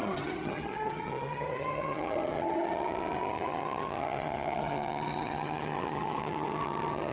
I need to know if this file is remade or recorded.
remade